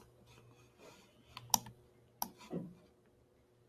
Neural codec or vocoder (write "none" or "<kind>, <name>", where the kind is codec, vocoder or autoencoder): none